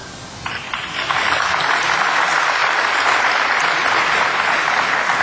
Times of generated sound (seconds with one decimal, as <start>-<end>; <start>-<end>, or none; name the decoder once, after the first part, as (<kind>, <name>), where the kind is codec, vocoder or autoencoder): none